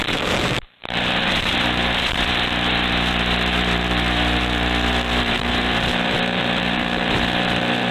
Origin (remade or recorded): remade